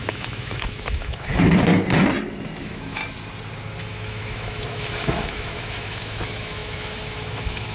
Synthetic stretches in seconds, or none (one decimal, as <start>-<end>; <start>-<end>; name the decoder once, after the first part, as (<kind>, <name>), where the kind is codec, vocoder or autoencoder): 0.0-1.3 (autoencoder, DAC-VAE); 2.6-3.0; 3.8-7.7